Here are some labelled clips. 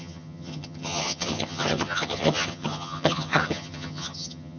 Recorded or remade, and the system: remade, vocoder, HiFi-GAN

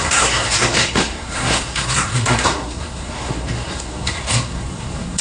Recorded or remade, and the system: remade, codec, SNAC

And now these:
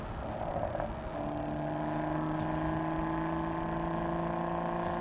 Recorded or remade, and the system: recorded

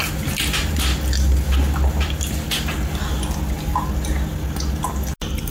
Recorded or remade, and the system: recorded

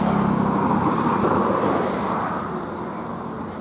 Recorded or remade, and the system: recorded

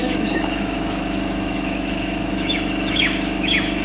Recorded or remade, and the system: remade, autoencoder, DAC-VAE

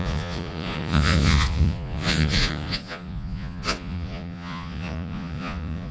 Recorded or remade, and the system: remade, vocoder, Vocos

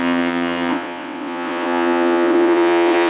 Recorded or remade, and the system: remade, vocoder, WaveNeXt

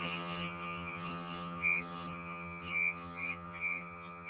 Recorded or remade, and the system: remade, vocoder, HiFi-GAN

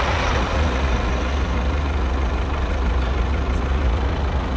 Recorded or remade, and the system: remade, vocoder, Vocos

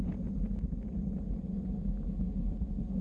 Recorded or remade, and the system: recorded